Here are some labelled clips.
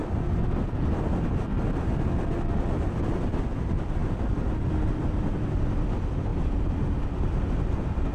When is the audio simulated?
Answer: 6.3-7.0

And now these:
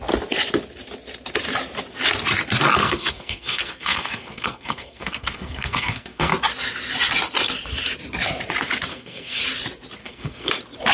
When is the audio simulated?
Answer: 2.8-6.3; 8.9-9.4; 10.0-10.5